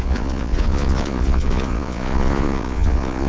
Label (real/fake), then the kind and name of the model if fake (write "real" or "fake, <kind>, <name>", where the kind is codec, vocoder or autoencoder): fake, vocoder, Vocos